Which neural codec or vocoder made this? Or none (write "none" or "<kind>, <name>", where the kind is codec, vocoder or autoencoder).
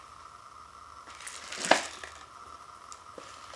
none